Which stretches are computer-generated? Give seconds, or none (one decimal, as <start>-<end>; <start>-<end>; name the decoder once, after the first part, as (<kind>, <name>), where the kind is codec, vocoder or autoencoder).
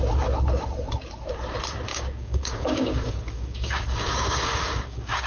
1.9-5.3 (codec, DAC)